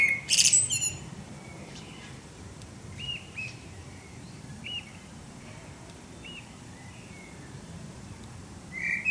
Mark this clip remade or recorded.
remade